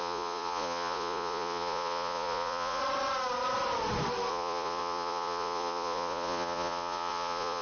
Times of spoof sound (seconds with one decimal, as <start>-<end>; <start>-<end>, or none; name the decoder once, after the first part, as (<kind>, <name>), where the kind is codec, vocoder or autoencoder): 0.0-2.8 (vocoder, Vocos); 4.3-7.6